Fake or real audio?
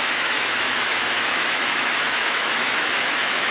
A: fake